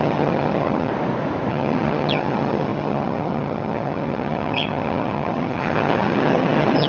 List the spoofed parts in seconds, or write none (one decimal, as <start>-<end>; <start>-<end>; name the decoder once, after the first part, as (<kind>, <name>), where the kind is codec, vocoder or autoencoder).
0.0-0.9 (vocoder, HiFi-GAN); 1.5-6.9